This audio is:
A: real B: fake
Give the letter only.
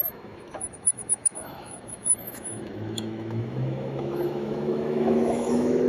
B